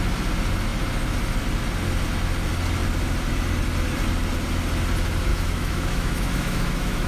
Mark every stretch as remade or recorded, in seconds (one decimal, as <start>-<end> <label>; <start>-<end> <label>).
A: 0.0-5.3 recorded; 5.3-7.1 remade